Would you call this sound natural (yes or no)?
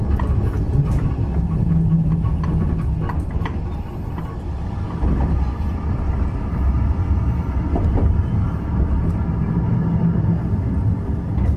yes